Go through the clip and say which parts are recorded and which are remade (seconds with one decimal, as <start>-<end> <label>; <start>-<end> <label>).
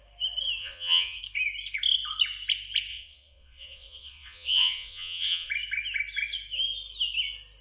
0.0-0.6 recorded; 0.6-1.2 remade; 1.2-2.9 recorded; 2.9-5.5 remade; 5.5-7.6 recorded